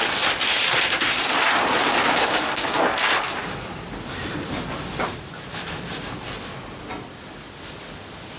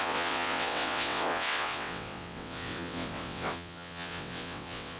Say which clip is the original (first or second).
first